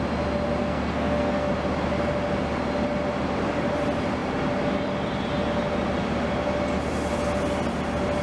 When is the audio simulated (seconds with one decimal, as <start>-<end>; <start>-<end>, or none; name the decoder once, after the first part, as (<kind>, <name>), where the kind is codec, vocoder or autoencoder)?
0.6-1.5 (codec, SNAC)